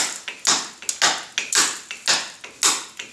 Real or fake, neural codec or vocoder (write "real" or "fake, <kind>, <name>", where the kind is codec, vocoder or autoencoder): real